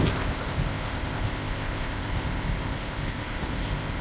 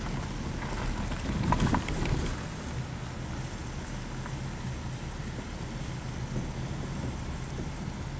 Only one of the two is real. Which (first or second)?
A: second